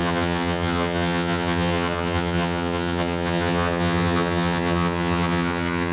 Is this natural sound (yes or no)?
no